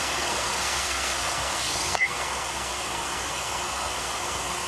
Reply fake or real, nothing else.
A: fake